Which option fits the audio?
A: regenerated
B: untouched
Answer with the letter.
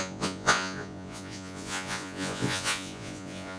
A